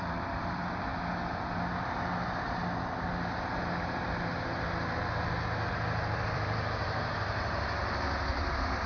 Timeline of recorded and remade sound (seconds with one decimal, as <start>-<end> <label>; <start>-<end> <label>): 0.0-0.9 remade; 0.9-5.7 recorded; 5.7-8.9 remade